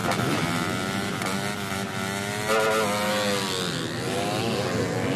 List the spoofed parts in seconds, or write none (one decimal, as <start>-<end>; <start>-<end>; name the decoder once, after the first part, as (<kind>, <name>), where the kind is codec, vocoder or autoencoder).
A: none